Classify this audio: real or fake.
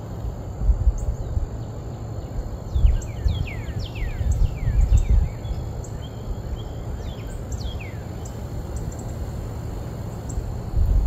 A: real